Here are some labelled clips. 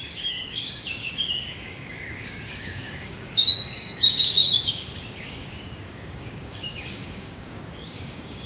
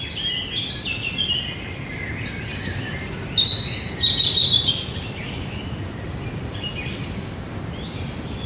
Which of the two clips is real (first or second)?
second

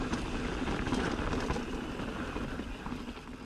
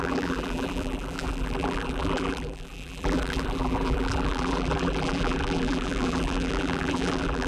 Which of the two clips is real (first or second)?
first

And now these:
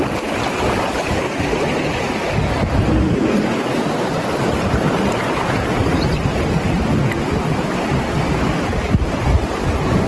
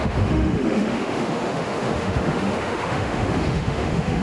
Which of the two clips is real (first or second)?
first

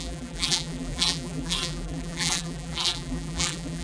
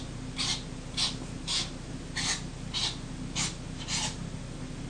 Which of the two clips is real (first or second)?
second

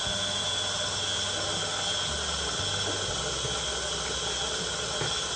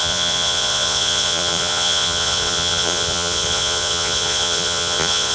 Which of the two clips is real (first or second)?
first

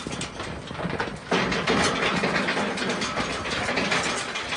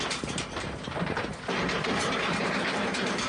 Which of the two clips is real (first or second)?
first